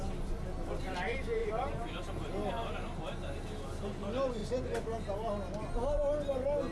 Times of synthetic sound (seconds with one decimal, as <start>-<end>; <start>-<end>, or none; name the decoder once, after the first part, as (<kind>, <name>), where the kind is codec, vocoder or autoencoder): 1.4-2.5 (vocoder, BigVGAN v2)